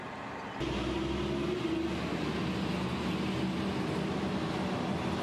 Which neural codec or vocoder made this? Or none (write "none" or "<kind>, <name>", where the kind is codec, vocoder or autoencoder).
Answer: none